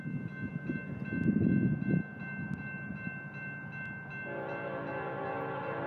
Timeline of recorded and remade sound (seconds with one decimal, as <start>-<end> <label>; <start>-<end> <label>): 0.0-5.9 recorded